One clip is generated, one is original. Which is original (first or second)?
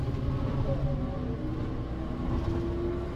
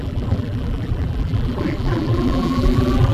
first